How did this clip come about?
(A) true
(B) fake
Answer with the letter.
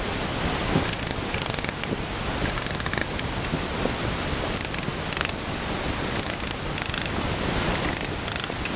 A